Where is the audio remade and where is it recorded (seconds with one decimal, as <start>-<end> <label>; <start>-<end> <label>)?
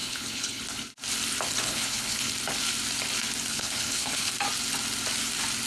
0.0-0.6 remade; 0.6-1.6 recorded; 1.6-2.3 remade; 2.3-3.5 recorded; 3.5-4.3 remade; 4.3-5.7 recorded